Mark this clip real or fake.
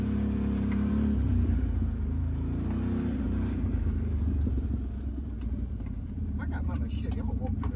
fake